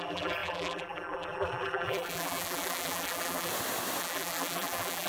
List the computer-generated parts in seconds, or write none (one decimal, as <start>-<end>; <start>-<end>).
0.0-3.5; 4.0-5.1